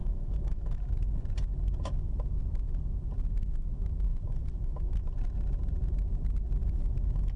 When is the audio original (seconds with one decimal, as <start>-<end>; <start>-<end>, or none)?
0.9-7.4

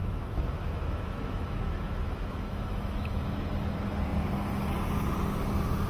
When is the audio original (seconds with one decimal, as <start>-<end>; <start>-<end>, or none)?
3.4-5.9

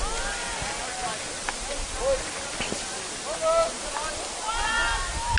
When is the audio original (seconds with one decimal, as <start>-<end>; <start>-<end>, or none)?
0.0-5.4